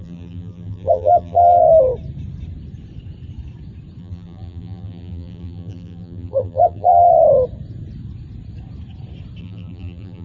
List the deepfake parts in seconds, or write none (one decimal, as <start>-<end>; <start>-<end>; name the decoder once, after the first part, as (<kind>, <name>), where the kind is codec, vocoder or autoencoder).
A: 0.0-1.6 (vocoder, BigVGAN v2); 4.0-7.1; 9.4-10.2